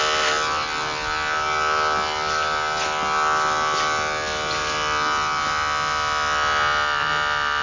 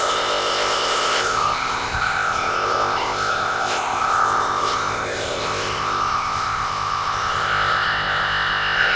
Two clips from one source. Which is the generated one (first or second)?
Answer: second